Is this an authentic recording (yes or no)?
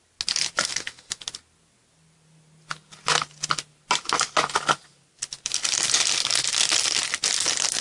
yes